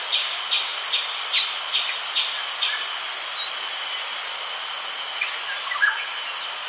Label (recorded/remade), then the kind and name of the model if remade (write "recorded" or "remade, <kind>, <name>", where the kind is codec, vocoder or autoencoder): recorded